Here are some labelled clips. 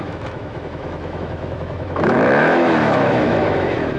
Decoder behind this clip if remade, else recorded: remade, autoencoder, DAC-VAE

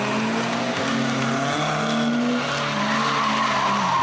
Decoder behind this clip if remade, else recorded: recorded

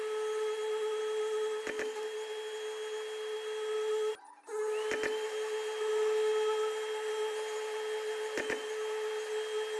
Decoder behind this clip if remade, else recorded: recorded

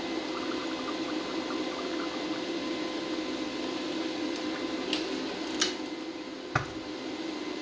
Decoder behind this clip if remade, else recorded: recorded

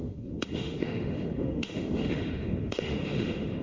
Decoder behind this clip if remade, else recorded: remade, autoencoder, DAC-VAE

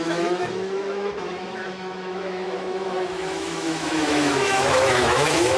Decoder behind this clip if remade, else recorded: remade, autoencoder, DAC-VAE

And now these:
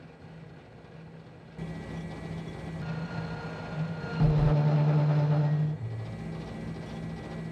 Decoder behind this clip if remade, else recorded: recorded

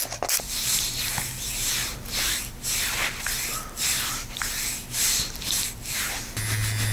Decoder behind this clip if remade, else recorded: recorded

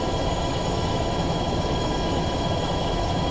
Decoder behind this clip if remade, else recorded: remade, autoencoder, DAC-VAE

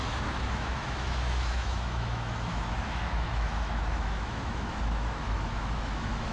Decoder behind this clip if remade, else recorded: remade, autoencoder, DAC-VAE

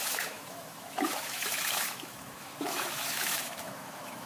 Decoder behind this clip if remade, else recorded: remade, autoencoder, DAC-VAE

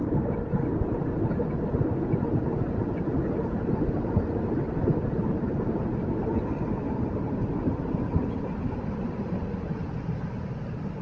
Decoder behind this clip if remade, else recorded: recorded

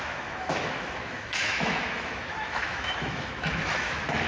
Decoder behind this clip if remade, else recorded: remade, autoencoder, DAC-VAE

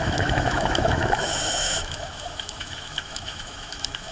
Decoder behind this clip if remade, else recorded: remade, autoencoder, DAC-VAE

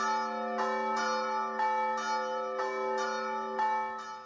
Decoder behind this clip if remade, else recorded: recorded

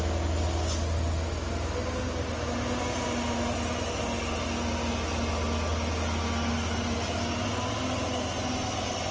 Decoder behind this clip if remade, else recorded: recorded